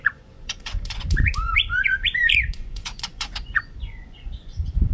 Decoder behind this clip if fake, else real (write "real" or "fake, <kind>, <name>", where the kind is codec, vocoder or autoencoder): fake, vocoder, Vocos